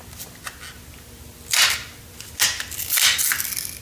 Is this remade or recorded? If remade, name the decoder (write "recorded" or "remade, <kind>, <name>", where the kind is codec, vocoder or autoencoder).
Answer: recorded